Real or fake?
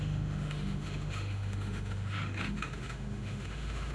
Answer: fake